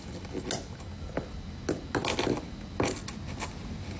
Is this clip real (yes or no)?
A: yes